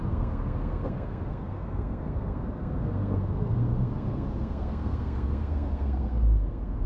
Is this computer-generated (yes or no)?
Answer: yes